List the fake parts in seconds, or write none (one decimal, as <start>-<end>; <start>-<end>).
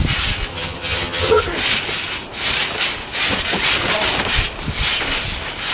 0.5-1.4